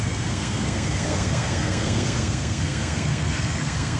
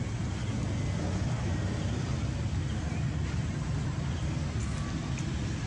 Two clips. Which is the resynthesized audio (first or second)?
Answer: first